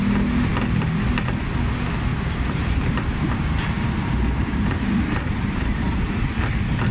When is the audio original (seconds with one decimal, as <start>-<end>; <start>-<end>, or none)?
0.0-2.1; 6.2-6.9